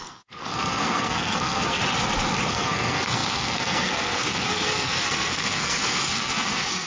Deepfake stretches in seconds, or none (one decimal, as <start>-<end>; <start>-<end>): 0.0-1.8; 2.5-6.9